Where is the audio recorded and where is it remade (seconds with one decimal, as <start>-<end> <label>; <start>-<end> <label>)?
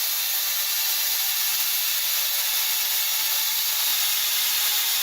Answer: 0.0-1.1 recorded; 1.1-1.9 remade; 1.9-3.9 recorded; 3.9-5.0 remade